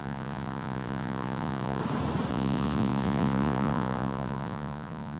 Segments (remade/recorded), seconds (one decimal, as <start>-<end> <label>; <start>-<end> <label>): 0.0-1.8 remade; 1.8-2.3 recorded; 2.3-5.2 remade